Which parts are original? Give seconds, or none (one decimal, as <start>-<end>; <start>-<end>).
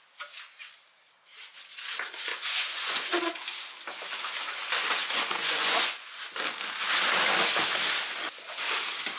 0.0-2.3; 3.2-5.0; 6.2-9.2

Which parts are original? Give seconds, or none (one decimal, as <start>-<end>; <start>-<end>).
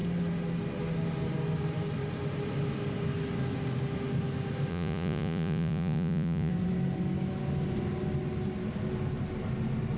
0.0-4.7; 6.5-10.0